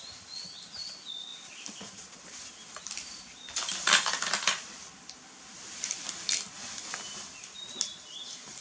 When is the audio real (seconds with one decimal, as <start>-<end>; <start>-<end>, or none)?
0.0-1.3; 6.1-8.6